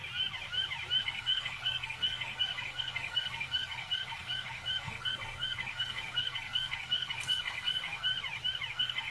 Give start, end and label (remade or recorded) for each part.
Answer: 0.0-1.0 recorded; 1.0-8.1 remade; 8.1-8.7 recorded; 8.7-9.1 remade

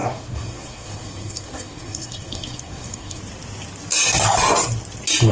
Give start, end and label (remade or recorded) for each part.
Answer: 0.0-3.2 remade; 3.2-5.3 recorded